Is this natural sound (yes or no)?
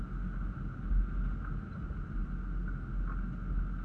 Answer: yes